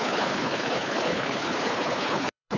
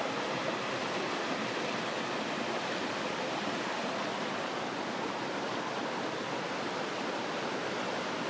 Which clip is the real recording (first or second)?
second